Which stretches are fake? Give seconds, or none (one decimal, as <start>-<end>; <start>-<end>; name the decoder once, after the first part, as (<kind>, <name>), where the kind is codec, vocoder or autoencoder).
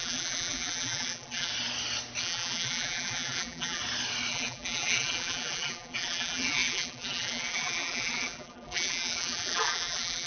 0.0-1.5 (vocoder, BigVGAN v2); 2.2-3.8; 4.3-10.3